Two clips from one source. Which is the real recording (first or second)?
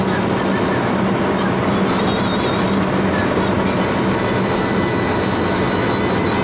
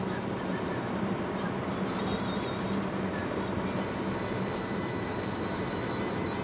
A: first